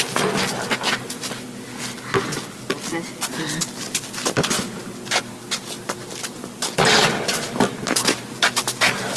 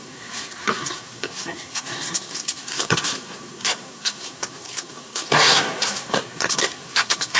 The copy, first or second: second